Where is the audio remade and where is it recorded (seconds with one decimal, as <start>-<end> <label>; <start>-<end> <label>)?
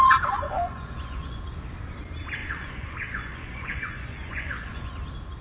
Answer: 0.0-1.4 remade; 1.4-2.4 recorded; 2.4-4.9 remade; 4.9-5.4 recorded